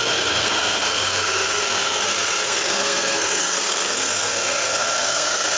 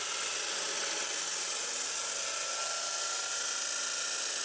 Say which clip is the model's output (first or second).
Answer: first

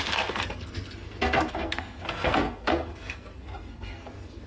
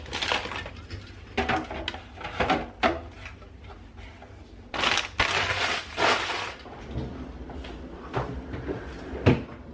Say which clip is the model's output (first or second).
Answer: first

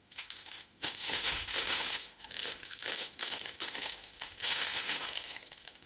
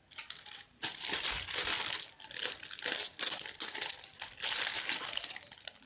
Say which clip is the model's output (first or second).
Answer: first